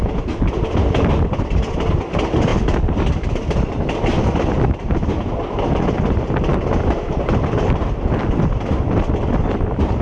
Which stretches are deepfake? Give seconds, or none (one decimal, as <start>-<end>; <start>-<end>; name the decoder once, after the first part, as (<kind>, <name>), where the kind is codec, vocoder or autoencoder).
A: none